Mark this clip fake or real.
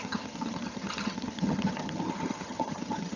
fake